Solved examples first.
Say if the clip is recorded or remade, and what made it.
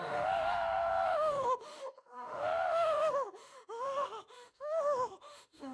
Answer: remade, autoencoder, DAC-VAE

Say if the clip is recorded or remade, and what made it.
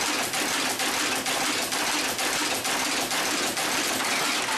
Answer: recorded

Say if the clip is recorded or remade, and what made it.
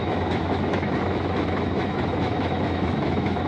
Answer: remade, autoencoder, DAC-VAE